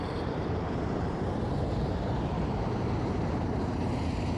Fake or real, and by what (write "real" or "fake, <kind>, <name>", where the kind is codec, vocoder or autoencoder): fake, vocoder, BigVGAN v2